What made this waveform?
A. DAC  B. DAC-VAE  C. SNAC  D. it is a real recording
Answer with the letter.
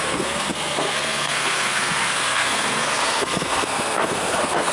C